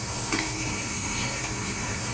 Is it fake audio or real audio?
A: fake